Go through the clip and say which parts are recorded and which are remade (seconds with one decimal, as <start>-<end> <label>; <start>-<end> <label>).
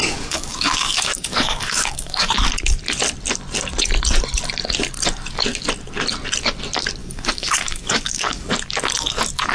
0.0-2.3 remade; 2.3-7.0 recorded; 7.0-8.5 remade; 8.5-9.5 recorded